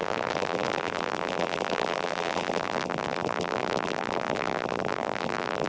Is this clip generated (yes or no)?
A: yes